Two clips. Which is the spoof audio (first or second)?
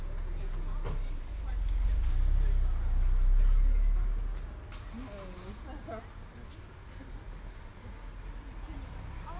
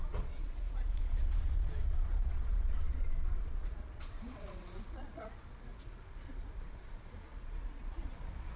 second